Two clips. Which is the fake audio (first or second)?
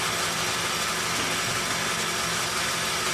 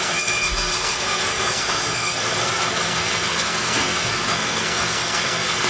second